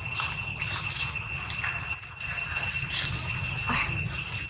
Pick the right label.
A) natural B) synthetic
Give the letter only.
A